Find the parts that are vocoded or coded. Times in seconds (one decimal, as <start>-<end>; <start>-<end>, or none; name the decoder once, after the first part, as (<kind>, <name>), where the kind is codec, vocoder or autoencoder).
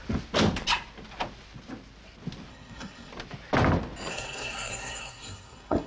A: 2.5-3.1 (codec, SNAC); 4.1-5.9